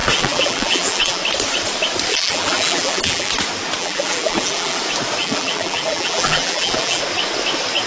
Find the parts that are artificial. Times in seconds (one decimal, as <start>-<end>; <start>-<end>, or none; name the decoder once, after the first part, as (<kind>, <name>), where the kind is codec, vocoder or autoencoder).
0.0-1.2 (vocoder, BigVGAN v2); 2.1-3.3; 3.8-4.8; 5.2-7.0